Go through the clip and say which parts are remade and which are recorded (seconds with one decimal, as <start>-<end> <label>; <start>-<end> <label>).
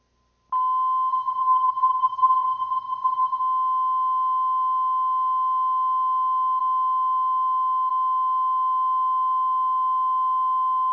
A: 0.0-1.1 recorded; 1.1-3.4 remade; 3.4-10.9 recorded